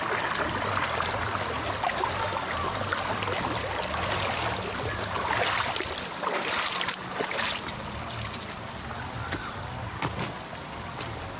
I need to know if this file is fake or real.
real